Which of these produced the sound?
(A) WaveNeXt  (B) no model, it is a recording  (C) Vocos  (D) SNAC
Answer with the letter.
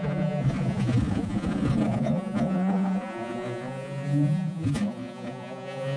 C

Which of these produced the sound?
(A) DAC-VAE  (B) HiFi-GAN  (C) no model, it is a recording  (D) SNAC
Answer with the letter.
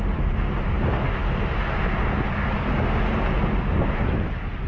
C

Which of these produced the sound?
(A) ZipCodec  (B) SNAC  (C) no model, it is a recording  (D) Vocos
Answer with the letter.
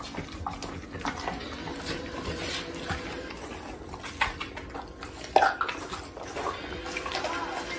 C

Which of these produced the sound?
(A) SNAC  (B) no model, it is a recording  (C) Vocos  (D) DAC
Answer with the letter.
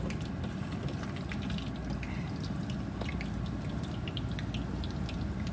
B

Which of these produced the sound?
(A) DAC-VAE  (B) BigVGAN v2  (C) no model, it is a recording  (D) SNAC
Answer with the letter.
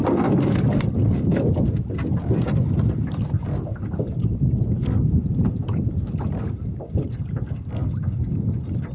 C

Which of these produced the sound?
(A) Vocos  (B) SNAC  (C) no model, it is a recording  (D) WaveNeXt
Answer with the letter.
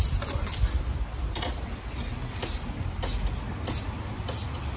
C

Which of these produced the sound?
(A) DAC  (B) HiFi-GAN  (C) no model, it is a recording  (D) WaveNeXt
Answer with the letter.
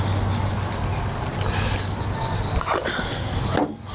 C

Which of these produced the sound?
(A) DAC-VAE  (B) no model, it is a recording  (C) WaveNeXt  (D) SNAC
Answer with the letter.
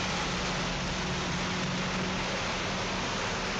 B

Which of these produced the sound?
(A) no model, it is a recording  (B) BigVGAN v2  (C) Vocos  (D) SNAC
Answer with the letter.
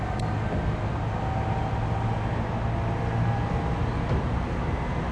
A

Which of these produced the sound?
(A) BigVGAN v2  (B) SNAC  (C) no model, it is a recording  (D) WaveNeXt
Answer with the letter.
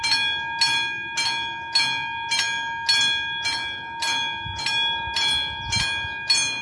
C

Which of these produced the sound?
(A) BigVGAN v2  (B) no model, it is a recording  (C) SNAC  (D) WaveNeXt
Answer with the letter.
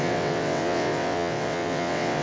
D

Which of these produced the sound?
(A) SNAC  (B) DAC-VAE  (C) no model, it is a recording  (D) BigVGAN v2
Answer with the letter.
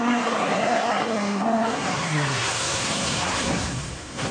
A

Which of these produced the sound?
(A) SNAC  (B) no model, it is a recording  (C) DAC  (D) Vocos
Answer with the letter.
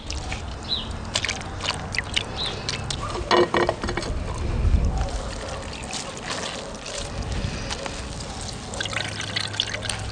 B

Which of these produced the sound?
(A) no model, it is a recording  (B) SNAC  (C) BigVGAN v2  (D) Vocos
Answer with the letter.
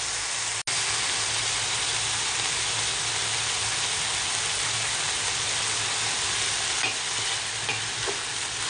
A